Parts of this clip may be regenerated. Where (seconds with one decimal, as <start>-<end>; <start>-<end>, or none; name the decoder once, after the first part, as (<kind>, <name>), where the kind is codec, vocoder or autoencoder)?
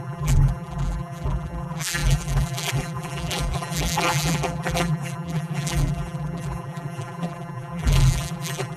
0.0-8.8 (vocoder, BigVGAN v2)